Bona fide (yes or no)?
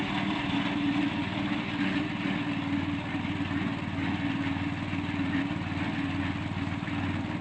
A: yes